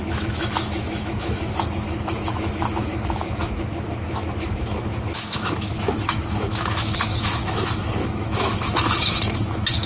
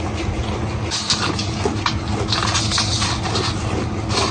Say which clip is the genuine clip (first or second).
second